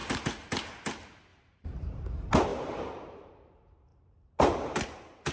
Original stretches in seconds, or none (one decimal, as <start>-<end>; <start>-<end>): 0.5-1.3; 2.1-2.5; 3.3-3.9